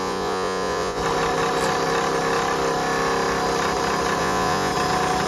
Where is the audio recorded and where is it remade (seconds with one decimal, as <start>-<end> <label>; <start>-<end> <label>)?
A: 0.0-1.0 remade; 1.0-4.2 recorded; 4.2-4.7 remade; 4.7-5.3 recorded